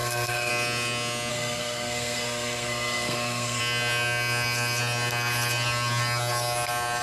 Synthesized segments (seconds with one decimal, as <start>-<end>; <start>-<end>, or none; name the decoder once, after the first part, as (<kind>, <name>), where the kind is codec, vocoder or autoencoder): 0.0-0.5 (codec, SNAC); 1.3-3.6